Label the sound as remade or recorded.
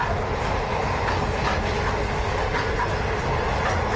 recorded